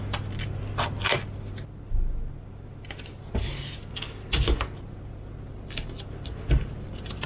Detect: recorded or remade recorded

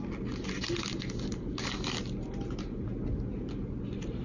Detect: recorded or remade recorded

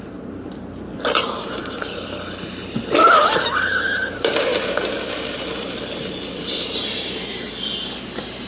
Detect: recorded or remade recorded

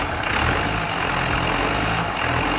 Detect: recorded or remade recorded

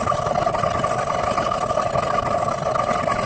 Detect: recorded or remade recorded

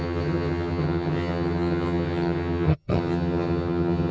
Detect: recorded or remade remade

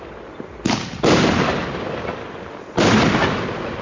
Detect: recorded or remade recorded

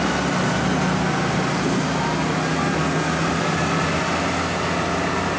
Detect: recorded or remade recorded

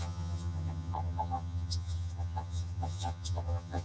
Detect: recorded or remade remade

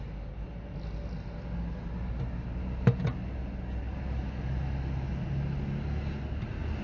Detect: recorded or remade recorded